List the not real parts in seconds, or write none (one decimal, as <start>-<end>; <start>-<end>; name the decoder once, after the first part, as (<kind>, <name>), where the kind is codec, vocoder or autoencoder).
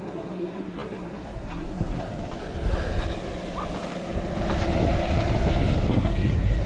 0.0-2.1 (codec, SNAC); 5.9-6.7